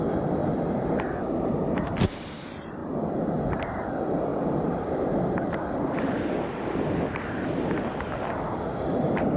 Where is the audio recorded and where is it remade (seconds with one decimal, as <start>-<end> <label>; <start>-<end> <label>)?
0.0-4.3 recorded; 4.3-7.8 remade; 7.8-9.4 recorded